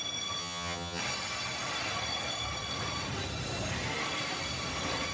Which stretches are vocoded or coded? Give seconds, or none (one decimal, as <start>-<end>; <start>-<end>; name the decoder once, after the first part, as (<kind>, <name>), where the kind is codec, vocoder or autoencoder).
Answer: 0.4-1.0 (vocoder, HiFi-GAN)